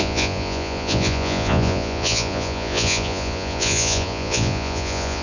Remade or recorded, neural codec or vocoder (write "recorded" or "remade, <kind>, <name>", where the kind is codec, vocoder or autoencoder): remade, vocoder, Vocos